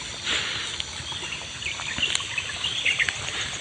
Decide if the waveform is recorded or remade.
recorded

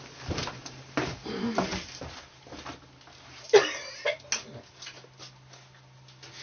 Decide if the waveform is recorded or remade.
recorded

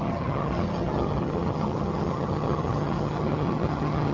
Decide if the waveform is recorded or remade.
remade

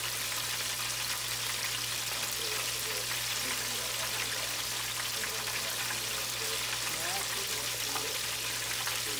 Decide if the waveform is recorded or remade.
recorded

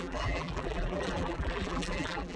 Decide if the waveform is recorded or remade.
remade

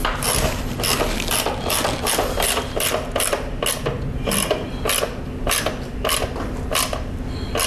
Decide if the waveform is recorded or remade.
recorded